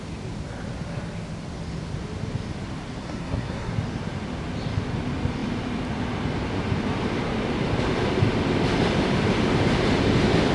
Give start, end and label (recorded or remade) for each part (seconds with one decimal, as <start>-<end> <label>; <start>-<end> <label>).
0.0-3.0 recorded; 3.0-3.7 remade; 3.7-10.5 recorded